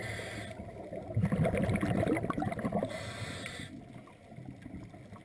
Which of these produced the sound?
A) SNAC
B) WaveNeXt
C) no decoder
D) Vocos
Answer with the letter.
C